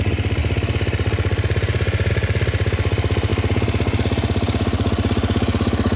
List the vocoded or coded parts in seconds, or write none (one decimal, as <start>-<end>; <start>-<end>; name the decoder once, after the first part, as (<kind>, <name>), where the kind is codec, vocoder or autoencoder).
none